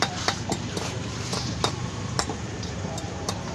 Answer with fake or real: fake